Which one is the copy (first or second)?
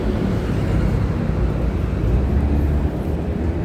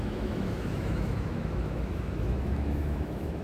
second